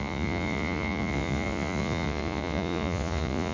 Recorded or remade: remade